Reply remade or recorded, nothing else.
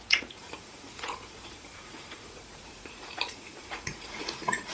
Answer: remade